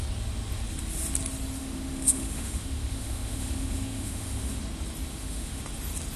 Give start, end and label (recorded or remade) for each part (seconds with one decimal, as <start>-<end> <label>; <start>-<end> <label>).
0.0-1.6 recorded; 1.6-4.6 remade; 4.6-5.1 recorded; 5.1-5.6 remade; 5.6-6.2 recorded